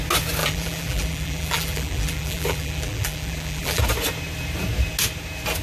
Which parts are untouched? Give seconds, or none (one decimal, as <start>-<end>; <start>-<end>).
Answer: 0.0-0.4; 3.8-5.6